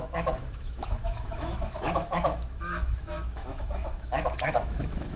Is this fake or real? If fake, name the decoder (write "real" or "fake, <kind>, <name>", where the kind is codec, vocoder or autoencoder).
fake, autoencoder, DAC-VAE